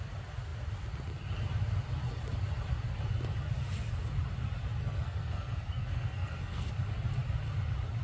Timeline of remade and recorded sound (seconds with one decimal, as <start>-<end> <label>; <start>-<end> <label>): 0.0-4.8 recorded; 4.8-6.7 remade; 6.7-8.0 recorded